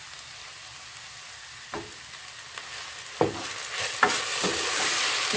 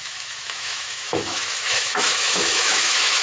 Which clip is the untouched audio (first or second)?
first